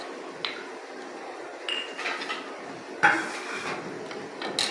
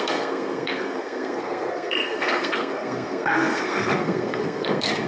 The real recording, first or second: first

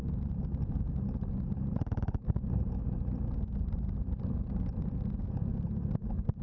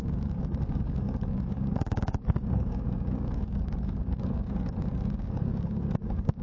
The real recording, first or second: first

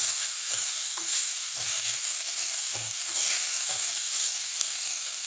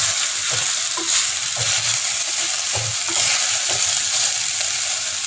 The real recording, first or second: second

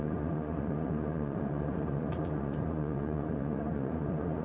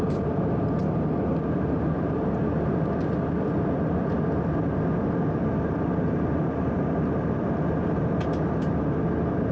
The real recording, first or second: second